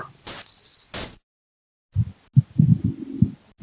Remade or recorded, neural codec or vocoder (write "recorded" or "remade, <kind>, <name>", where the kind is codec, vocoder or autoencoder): recorded